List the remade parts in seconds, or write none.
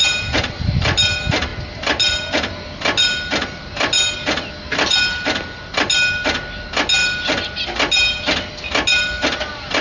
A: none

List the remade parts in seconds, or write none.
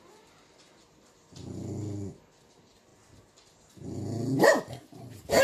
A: none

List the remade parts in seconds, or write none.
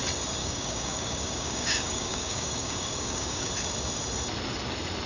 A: 0.4-3.5 (codec, DAC)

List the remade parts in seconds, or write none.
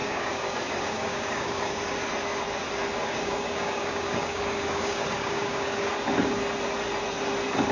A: 0.0-1.7 (codec, DAC); 3.0-5.9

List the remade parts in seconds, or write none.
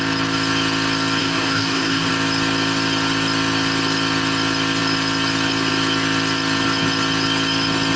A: 1.2-2.1 (codec, DAC)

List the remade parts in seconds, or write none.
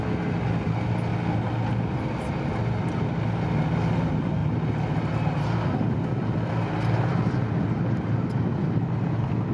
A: none